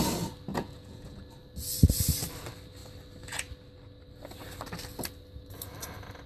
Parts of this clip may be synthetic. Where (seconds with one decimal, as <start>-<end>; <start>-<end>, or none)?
0.5-1.2